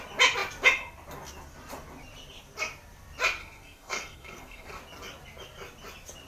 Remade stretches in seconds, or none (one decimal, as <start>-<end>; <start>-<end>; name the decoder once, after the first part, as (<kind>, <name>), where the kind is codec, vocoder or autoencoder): 3.4-4.8 (codec, SNAC)